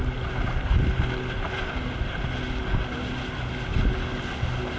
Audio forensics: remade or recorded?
recorded